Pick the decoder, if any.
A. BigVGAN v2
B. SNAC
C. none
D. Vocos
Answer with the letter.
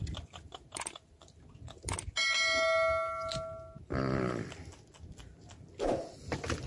C